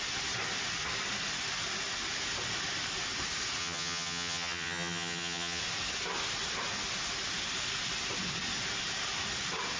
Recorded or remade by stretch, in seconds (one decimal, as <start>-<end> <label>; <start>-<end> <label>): 0.0-3.6 recorded; 3.6-5.6 remade; 5.6-9.8 recorded